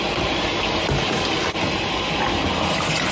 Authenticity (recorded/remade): recorded